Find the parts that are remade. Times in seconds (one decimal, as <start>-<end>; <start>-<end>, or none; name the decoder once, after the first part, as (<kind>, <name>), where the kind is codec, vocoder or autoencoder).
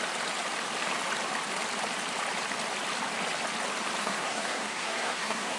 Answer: 4.0-5.6 (codec, SNAC)